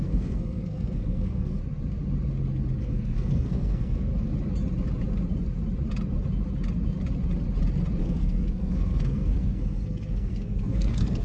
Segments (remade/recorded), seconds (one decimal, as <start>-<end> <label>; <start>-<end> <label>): 0.0-1.6 remade; 1.6-2.8 recorded; 2.8-4.1 remade; 4.1-8.0 recorded; 8.0-11.2 remade